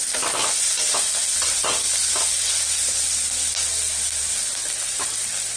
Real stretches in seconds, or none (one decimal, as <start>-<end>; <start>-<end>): 0.0-5.6